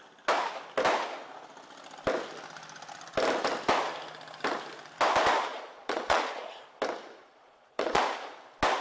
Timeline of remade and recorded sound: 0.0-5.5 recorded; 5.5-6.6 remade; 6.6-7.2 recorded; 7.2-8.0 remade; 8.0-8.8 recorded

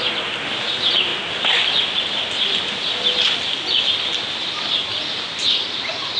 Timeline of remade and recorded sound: 0.0-6.2 recorded

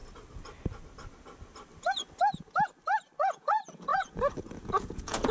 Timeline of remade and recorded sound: 0.0-3.2 recorded; 3.2-5.3 remade

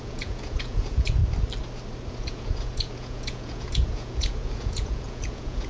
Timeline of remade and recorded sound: 0.0-1.2 remade; 1.2-2.1 recorded; 2.1-5.7 remade